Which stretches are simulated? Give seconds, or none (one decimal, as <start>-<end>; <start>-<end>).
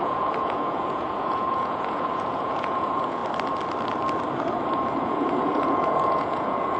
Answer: 0.0-3.2; 5.0-6.8